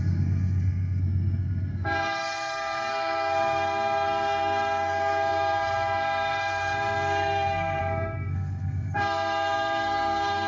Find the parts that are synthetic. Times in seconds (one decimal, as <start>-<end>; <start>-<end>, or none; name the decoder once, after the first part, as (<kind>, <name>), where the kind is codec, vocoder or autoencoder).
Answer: 0.0-10.5 (codec, SNAC)